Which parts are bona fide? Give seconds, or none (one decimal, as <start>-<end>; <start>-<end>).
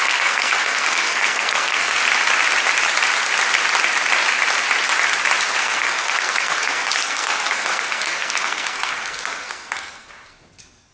2.0-5.6